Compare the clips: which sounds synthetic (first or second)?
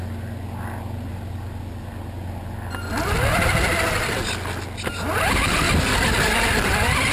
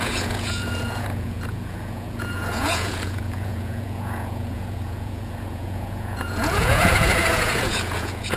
second